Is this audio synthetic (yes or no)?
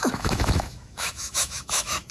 yes